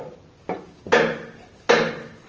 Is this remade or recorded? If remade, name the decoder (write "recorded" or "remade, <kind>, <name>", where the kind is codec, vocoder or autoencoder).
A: recorded